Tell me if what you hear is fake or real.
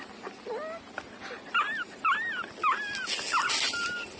real